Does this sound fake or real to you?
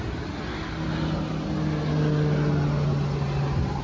real